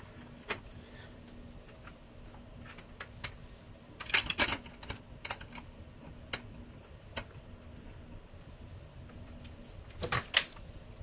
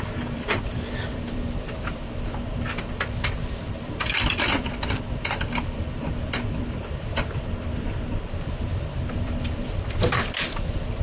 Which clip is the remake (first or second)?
second